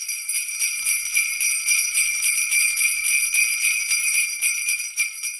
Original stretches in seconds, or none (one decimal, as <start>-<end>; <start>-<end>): 1.1-3.8

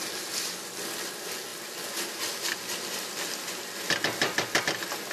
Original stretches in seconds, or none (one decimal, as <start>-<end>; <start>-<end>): 0.0-5.1

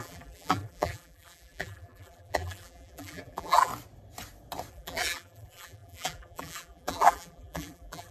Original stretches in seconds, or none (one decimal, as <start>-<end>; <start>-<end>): 3.7-4.7

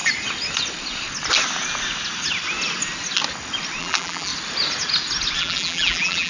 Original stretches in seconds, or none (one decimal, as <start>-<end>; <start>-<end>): 0.0-3.8; 4.3-5.4

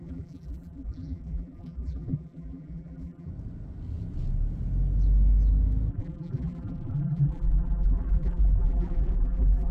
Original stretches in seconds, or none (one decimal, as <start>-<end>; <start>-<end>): 3.3-5.9

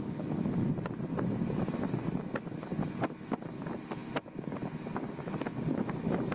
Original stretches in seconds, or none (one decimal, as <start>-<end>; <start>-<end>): 0.0-4.0; 5.3-6.3

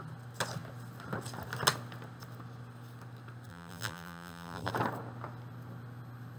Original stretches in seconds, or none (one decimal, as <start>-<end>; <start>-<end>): 0.0-3.5; 4.7-6.4

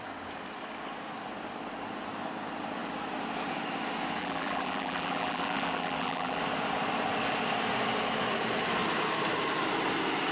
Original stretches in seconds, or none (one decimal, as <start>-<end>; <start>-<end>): 0.0-4.2; 6.4-10.3